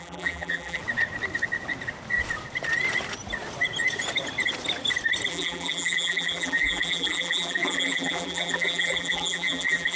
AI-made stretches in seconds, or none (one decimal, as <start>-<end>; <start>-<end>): 0.0-0.8; 5.3-10.0